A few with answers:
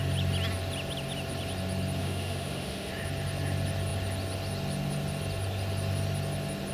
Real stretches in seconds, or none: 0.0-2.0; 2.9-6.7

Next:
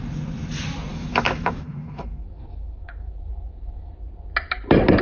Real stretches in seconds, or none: 0.0-0.9; 3.9-5.0